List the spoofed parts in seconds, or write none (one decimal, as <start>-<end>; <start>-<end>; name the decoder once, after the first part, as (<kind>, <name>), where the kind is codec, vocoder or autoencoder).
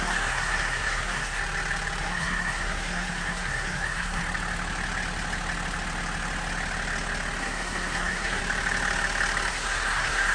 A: 0.0-1.4 (codec, SNAC); 2.0-4.2; 7.4-8.4; 9.5-10.3